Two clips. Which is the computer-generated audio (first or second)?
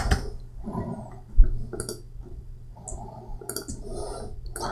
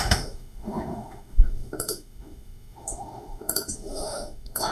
second